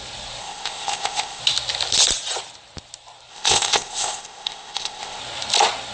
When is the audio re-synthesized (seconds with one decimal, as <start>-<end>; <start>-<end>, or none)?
0.4-1.4; 3.3-5.2